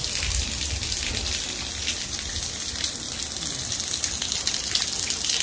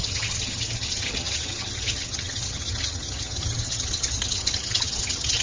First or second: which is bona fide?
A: first